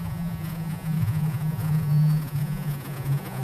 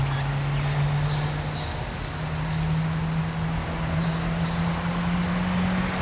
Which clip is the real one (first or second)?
second